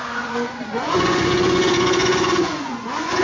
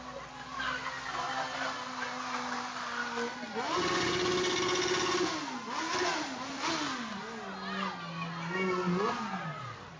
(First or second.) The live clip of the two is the second